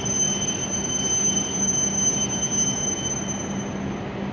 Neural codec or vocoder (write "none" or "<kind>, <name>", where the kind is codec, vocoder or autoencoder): none